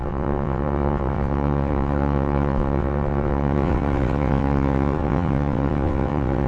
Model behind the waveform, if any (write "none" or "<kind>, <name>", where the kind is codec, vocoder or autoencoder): vocoder, WaveNeXt